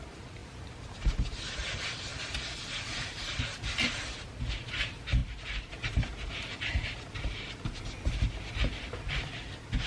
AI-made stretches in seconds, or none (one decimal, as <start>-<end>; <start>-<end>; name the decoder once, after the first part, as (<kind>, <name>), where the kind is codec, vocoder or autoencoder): none